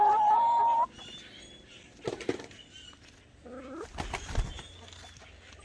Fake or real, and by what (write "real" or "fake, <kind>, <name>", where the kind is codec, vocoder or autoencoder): real